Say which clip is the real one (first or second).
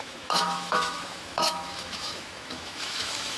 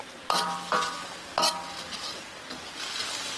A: second